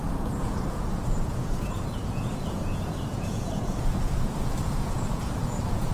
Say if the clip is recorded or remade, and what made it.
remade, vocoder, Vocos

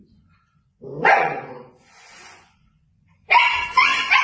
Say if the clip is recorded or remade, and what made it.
remade, vocoder, Vocos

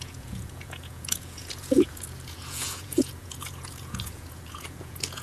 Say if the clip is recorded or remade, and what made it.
remade, vocoder, Vocos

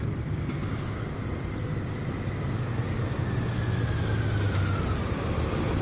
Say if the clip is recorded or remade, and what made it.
recorded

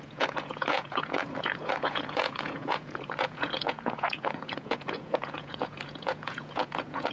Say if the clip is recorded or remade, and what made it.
remade, vocoder, Vocos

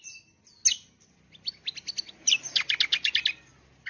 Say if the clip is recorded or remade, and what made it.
recorded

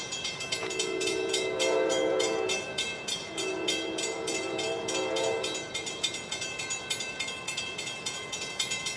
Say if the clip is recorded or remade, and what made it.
remade, vocoder, Vocos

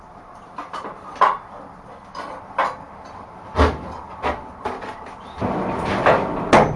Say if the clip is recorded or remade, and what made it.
recorded